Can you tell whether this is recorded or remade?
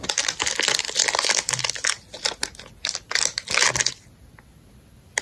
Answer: recorded